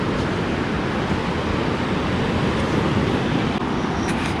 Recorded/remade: recorded